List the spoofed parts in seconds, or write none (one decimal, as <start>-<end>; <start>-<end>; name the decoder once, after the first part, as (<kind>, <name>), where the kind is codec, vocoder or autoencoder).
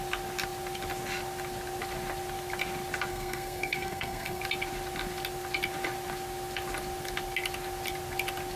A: 3.1-4.4 (codec, SNAC)